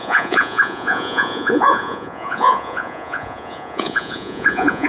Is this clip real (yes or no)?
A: no